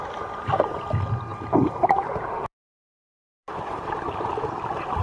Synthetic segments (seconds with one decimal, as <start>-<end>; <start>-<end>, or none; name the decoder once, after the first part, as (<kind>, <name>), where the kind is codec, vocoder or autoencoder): 1.3-4.3 (vocoder, BigVGAN v2)